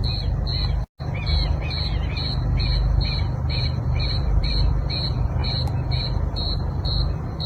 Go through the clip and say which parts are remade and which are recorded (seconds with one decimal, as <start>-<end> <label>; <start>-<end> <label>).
0.0-3.8 recorded; 3.8-5.4 remade; 5.4-6.0 recorded; 6.0-7.5 remade